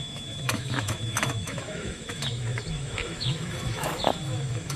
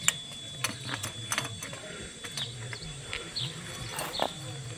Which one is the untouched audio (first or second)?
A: second